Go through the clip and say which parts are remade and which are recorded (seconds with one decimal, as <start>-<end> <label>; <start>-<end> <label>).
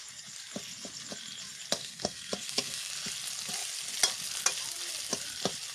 0.0-1.8 recorded; 1.8-2.9 remade; 2.9-5.7 recorded